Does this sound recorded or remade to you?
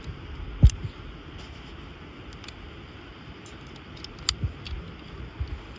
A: recorded